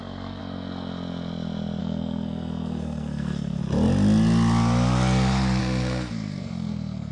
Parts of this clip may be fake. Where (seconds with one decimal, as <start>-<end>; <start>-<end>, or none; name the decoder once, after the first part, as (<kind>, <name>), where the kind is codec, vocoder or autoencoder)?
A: 0.0-0.4 (codec, SNAC); 1.8-3.6; 5.6-7.1